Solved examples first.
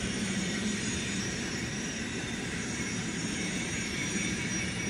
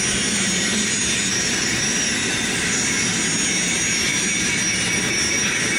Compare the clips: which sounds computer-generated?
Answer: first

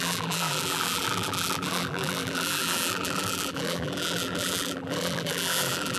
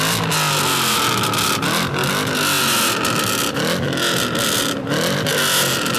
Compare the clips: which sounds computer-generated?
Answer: first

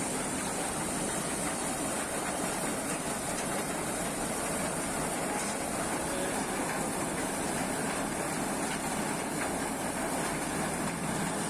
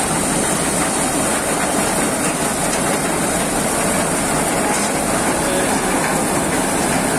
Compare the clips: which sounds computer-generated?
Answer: first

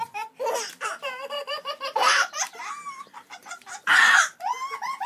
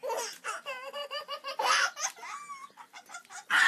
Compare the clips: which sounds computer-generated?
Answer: first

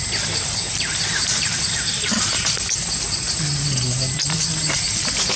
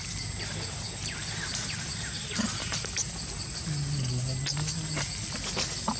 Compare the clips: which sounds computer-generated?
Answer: first